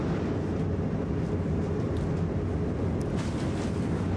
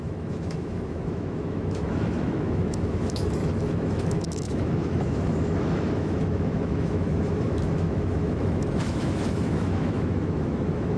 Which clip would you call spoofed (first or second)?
second